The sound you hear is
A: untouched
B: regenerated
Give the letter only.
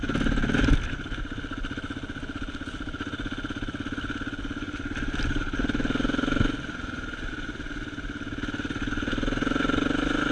A